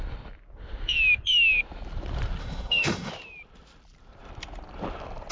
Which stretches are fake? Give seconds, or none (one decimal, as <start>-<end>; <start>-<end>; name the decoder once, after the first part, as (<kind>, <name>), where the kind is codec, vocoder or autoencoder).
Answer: 2.4-3.1 (autoencoder, DAC-VAE)